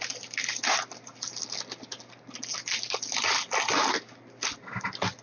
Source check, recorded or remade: recorded